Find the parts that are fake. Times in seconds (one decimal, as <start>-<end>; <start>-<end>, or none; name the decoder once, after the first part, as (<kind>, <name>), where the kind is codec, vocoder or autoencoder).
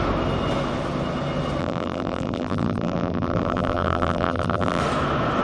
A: 1.6-4.8 (vocoder, BigVGAN v2)